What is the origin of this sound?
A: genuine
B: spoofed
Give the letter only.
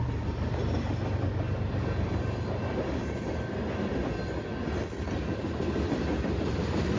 A